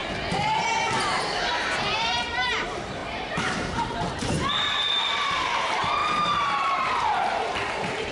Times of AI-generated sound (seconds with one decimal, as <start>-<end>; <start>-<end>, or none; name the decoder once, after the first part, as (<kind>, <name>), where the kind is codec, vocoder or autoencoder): 1.5-8.1 (vocoder, BigVGAN v2)